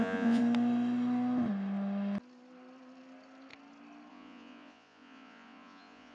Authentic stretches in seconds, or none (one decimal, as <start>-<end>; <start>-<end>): 0.4-4.1